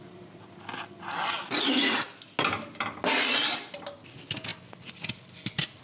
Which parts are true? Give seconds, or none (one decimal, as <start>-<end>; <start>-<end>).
0.0-5.8